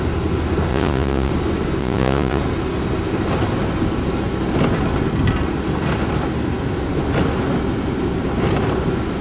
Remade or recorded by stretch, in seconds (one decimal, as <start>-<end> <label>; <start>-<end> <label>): 0.0-0.7 recorded; 0.7-1.3 remade; 1.3-1.8 recorded; 1.8-2.4 remade; 2.4-9.2 recorded